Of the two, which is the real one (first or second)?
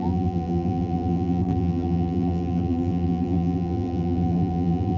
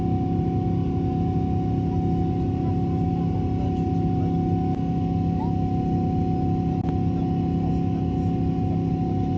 second